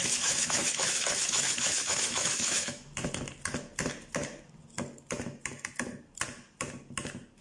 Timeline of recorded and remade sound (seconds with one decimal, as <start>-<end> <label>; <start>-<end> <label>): 0.0-2.9 remade; 2.9-7.4 recorded